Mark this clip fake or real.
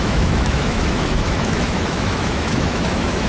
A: fake